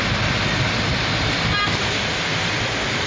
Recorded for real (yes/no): yes